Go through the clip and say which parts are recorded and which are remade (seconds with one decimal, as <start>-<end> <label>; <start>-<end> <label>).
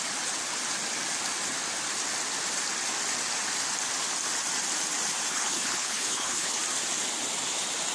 0.0-5.3 recorded; 5.3-6.6 remade; 6.6-7.9 recorded